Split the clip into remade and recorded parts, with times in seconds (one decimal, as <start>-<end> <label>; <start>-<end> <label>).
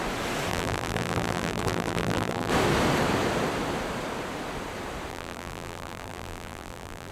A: 0.0-0.5 recorded; 0.5-2.5 remade; 2.5-5.1 recorded; 5.1-7.1 remade